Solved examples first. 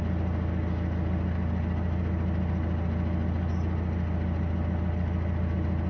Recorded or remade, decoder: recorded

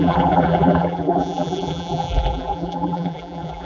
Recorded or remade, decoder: remade, vocoder, BigVGAN v2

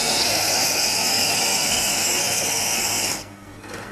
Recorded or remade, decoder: remade, codec, SNAC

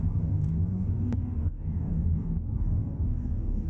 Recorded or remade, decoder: remade, codec, DAC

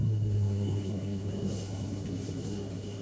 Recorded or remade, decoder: remade, codec, SNAC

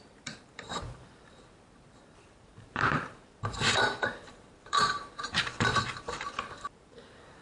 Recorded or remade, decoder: remade, vocoder, BigVGAN v2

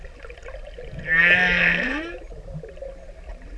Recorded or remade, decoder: recorded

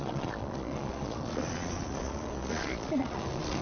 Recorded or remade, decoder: remade, vocoder, Vocos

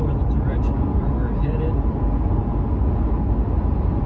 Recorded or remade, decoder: recorded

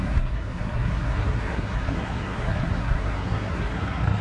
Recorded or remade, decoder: remade, codec, SNAC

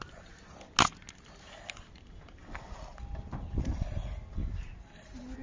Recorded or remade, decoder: recorded